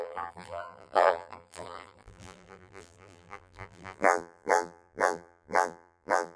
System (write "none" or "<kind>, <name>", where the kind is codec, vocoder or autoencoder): vocoder, BigVGAN v2